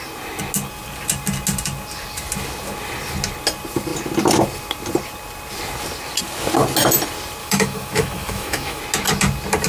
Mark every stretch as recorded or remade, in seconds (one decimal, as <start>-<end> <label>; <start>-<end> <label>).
0.0-7.4 recorded; 7.4-8.8 remade; 8.8-9.7 recorded